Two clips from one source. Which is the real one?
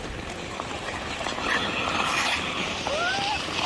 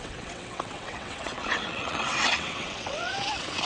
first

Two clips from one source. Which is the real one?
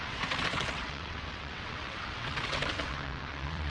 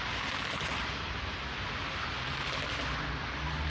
second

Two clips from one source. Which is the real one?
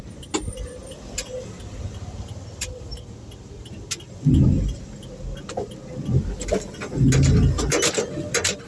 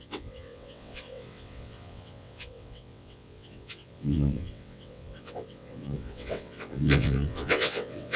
first